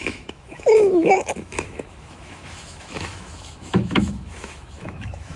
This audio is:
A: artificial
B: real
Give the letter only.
A